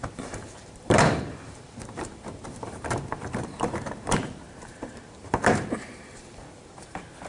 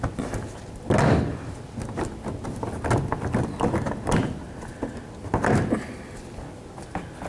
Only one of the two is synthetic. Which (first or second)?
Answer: first